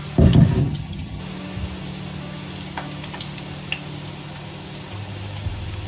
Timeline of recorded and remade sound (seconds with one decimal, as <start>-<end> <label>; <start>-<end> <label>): 0.0-0.6 recorded; 0.6-1.2 remade; 1.2-5.9 recorded